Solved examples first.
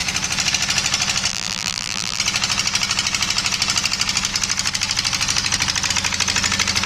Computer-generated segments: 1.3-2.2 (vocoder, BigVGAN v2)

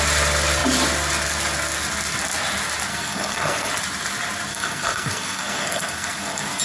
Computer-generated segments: 2.9-3.7 (codec, SNAC); 4.5-6.6

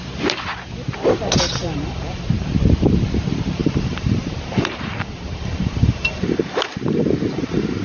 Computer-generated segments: 1.6-2.3 (vocoder, BigVGAN v2); 3.6-7.8